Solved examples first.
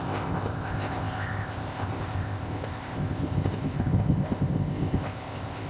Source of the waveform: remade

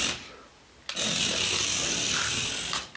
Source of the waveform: recorded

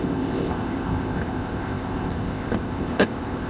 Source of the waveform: remade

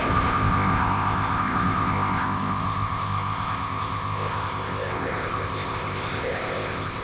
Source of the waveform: remade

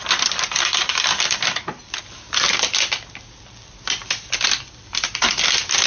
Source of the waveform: recorded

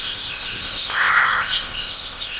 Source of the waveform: remade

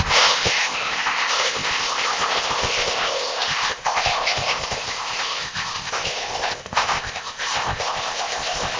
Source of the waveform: remade